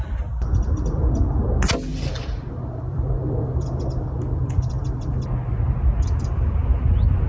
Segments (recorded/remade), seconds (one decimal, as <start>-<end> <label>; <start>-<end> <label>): 0.0-1.9 recorded; 1.9-4.7 remade; 4.7-7.3 recorded